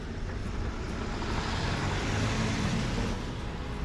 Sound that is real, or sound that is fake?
real